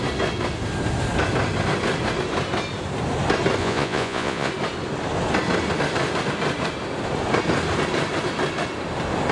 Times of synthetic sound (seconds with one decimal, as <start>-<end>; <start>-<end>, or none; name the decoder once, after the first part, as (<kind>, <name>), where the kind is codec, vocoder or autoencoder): 3.6-4.5 (vocoder, Vocos)